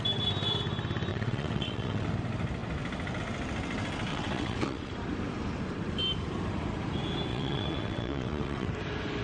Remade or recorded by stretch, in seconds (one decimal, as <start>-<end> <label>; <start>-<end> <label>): 0.0-1.1 recorded; 1.1-2.1 remade; 2.1-4.1 recorded; 4.1-4.9 remade; 4.9-7.3 recorded; 7.3-8.7 remade; 8.7-9.2 recorded